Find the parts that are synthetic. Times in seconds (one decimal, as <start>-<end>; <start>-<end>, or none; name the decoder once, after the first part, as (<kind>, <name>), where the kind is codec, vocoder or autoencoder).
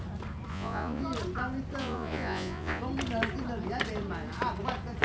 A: 0.5-1.0 (vocoder, Vocos); 1.8-2.8